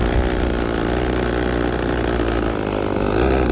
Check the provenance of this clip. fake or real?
real